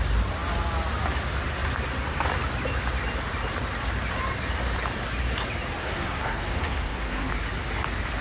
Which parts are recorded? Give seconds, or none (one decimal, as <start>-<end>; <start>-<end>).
0.0-5.8; 7.3-8.2